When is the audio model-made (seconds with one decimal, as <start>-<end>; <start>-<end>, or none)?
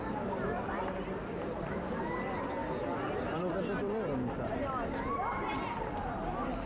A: none